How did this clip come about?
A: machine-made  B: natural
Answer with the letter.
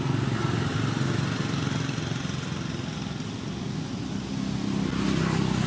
B